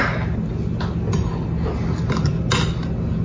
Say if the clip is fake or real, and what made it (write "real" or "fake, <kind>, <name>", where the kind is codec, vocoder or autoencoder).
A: real